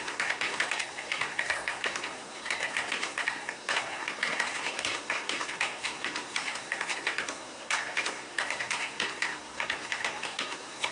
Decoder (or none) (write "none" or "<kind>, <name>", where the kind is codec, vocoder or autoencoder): codec, SNAC